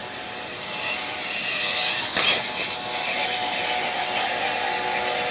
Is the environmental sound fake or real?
real